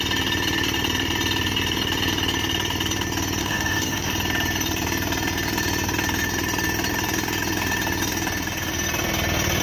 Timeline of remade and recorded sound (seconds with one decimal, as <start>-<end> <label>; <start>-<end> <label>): 0.0-3.4 recorded; 3.4-4.1 remade; 4.1-9.6 recorded